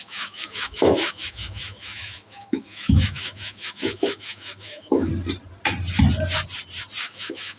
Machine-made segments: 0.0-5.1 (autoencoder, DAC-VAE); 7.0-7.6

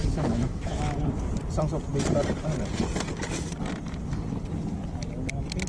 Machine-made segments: 0.0-1.0 (autoencoder, DAC-VAE)